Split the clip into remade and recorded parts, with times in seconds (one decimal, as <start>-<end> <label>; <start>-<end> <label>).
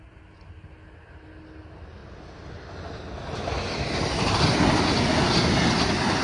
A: 0.0-6.2 recorded